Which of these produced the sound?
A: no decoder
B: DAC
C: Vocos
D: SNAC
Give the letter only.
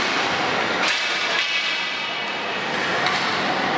A